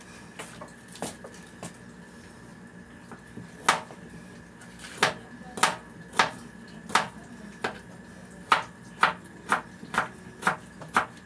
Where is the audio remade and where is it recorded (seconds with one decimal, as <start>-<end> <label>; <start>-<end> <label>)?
0.0-11.3 recorded